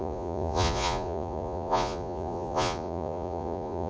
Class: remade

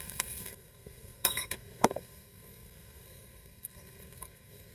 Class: remade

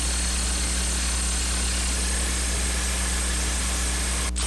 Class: recorded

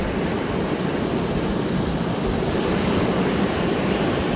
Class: remade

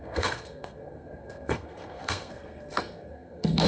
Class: remade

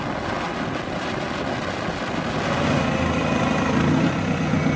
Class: recorded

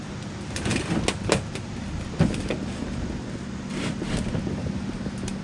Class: recorded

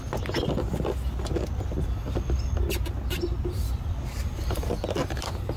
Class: recorded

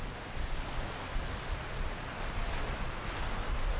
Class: recorded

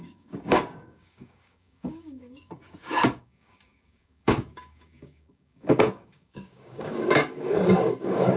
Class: remade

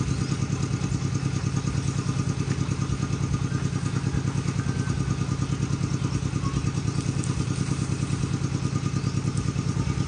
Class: recorded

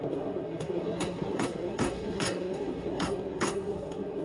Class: remade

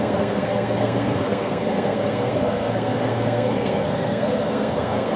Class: remade